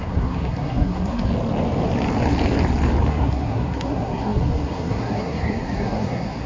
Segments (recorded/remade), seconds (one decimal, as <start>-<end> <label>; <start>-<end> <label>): 0.0-1.3 remade; 1.3-3.1 recorded; 3.1-6.5 remade